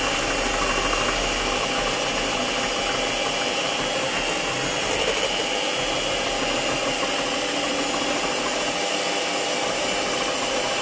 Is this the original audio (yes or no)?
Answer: yes